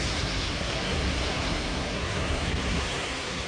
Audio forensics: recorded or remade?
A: remade